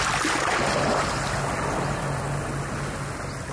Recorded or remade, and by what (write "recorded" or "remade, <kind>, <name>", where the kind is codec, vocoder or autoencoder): recorded